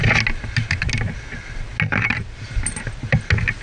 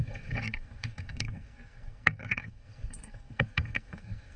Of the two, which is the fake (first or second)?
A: second